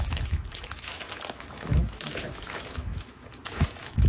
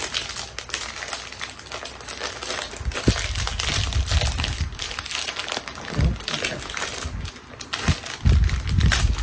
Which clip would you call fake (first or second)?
first